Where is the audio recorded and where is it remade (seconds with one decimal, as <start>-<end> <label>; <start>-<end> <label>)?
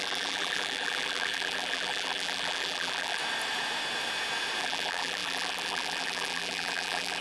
0.0-3.2 remade; 3.2-4.6 recorded; 4.6-7.2 remade